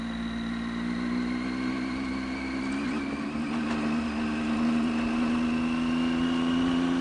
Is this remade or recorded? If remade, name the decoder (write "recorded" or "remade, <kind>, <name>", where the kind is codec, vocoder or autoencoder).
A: recorded